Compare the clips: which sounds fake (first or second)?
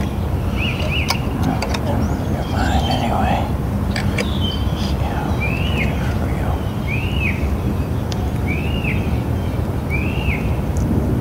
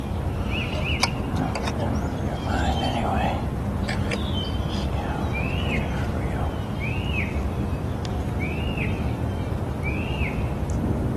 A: first